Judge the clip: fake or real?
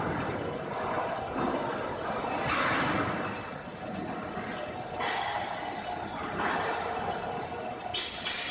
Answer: real